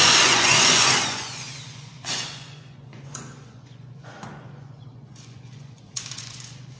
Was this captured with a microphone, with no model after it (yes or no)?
no